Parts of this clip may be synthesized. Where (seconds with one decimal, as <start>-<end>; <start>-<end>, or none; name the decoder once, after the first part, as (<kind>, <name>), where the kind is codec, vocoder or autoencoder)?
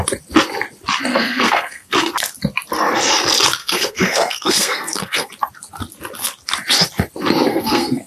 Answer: 1.1-2.1 (codec, SNAC); 3.6-5.3; 7.5-8.1